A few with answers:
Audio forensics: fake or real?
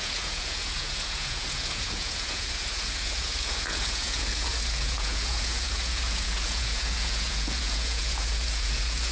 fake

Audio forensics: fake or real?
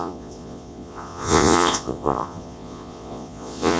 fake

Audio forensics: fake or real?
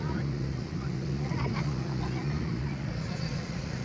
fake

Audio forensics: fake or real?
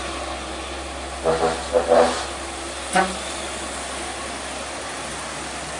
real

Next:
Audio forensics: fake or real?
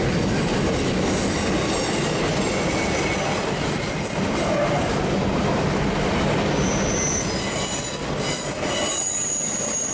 real